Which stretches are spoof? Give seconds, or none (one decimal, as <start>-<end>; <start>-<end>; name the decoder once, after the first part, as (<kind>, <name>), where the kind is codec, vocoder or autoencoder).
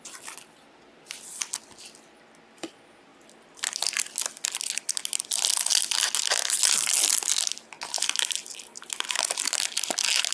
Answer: none